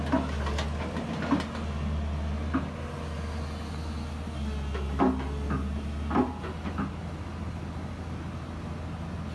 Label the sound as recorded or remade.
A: recorded